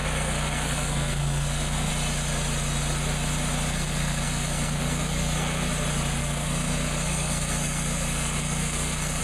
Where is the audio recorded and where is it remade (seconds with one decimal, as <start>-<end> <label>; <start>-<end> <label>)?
0.0-1.9 remade; 1.9-3.7 recorded; 3.7-5.7 remade; 5.7-6.2 recorded; 6.2-9.2 remade